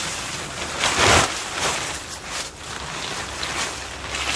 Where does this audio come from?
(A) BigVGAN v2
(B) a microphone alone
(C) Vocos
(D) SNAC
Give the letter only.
B